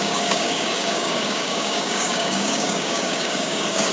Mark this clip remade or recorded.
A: remade